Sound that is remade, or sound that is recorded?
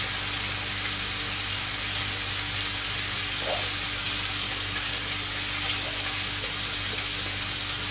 recorded